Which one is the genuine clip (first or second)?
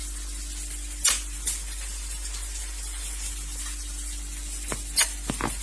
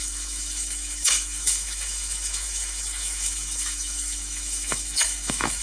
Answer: first